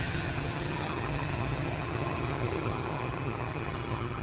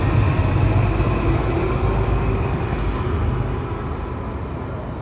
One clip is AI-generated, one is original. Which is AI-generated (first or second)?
first